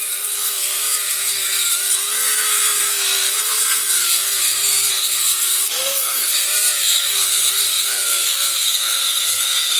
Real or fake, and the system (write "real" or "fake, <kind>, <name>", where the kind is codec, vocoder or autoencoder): fake, codec, SNAC